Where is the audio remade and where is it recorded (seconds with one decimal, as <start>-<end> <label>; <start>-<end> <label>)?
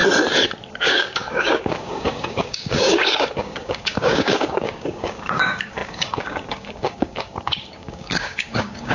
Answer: 0.0-0.7 recorded; 0.7-8.9 remade